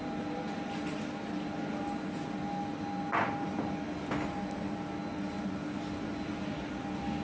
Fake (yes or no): no